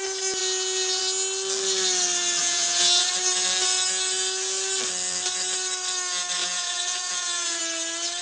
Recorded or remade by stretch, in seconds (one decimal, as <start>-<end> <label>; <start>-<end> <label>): 0.0-0.4 recorded; 0.4-1.0 remade; 1.0-2.4 recorded; 2.4-3.1 remade; 3.1-6.4 recorded; 6.4-7.6 remade; 7.6-8.2 recorded